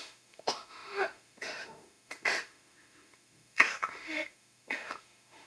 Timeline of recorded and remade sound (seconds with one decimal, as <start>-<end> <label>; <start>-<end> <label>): 0.0-5.5 remade